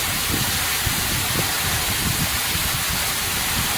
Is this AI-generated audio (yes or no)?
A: no